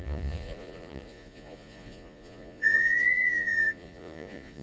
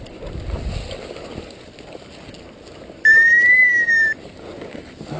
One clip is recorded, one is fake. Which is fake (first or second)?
first